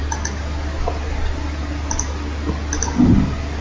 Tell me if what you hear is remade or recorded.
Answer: recorded